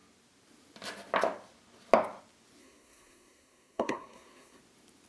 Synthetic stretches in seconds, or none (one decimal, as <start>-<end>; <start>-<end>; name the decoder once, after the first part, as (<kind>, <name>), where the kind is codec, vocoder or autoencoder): 2.6-4.6 (codec, SNAC)